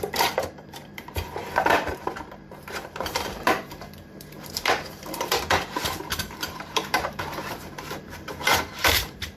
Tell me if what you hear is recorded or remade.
remade